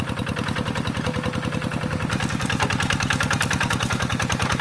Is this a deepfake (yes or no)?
no